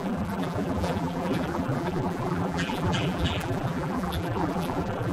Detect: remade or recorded remade